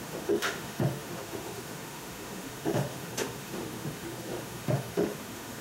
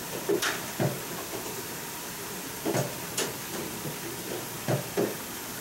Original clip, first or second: second